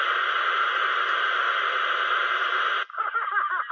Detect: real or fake real